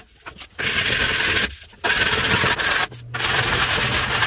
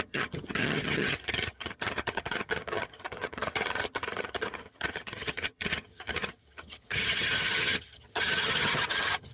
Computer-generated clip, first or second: second